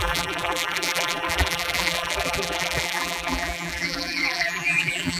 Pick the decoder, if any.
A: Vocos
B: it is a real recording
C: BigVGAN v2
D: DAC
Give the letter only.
C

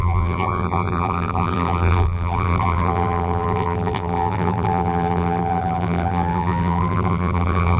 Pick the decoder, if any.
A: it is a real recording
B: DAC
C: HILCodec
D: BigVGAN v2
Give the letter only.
D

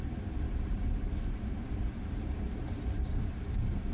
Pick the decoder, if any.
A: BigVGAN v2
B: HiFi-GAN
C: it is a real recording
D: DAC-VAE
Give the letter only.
A